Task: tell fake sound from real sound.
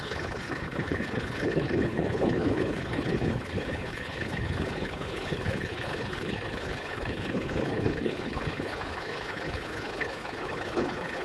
fake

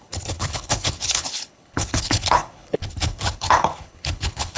fake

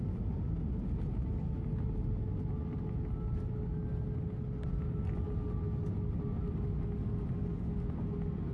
real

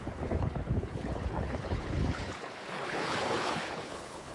fake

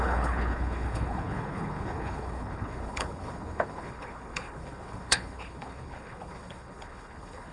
fake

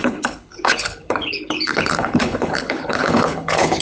fake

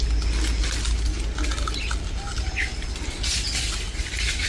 real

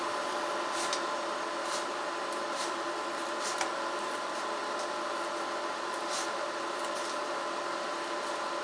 real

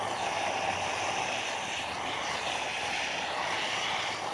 real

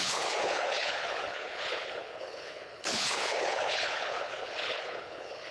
fake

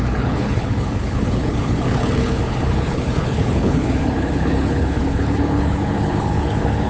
fake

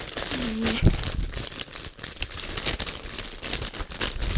real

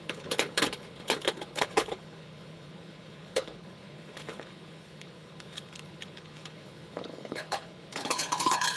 fake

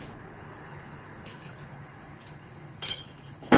fake